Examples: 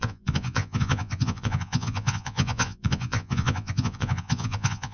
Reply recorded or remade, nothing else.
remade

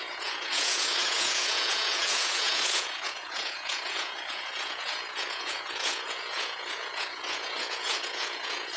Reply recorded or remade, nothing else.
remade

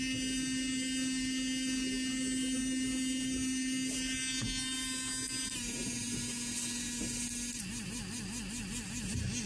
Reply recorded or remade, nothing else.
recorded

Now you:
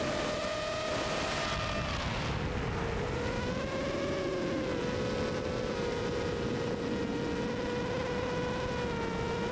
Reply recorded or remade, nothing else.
recorded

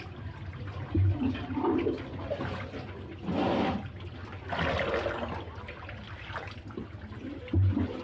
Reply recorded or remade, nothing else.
recorded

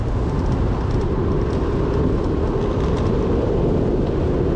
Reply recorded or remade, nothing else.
recorded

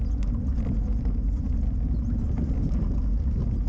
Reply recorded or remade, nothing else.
recorded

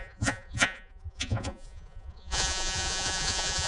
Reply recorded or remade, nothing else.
remade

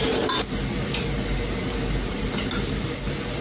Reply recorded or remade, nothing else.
recorded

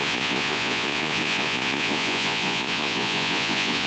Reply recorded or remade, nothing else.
remade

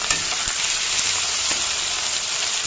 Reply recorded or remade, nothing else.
recorded